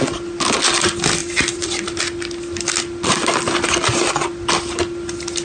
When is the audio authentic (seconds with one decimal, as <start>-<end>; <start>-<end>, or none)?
0.0-1.2; 2.0-5.4

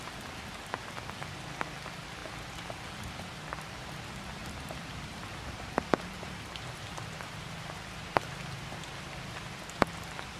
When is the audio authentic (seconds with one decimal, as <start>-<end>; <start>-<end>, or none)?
0.0-4.4; 8.2-10.4

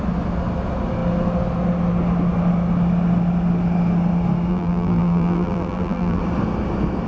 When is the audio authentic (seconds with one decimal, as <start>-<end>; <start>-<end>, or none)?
0.0-4.5; 6.2-7.1

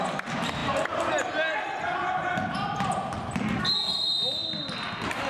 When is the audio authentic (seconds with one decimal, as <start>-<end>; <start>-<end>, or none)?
0.0-5.3

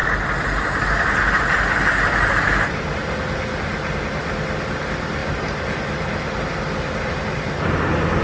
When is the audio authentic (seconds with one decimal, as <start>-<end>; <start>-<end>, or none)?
0.0-8.2

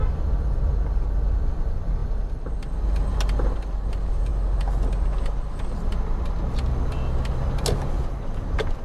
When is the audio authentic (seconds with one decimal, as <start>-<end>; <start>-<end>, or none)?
0.0-8.8